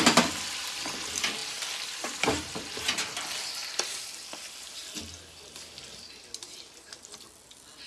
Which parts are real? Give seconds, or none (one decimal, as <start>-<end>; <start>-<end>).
0.0-1.4; 2.4-7.9